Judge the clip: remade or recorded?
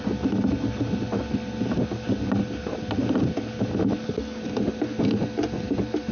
recorded